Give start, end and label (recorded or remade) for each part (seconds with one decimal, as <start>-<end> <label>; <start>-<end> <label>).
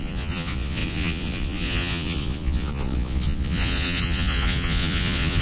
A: 0.0-5.4 remade